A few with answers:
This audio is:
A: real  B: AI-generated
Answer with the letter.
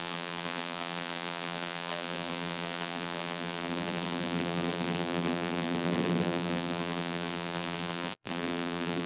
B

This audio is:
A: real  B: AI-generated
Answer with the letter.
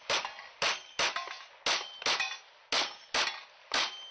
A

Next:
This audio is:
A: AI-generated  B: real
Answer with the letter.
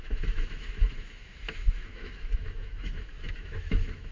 A